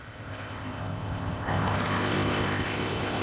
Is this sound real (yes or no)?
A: no